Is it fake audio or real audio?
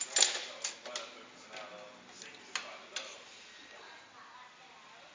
real